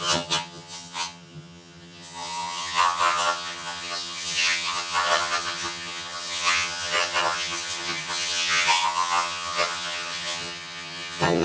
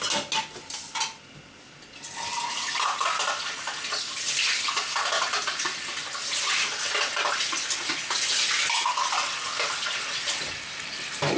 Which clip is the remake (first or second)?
first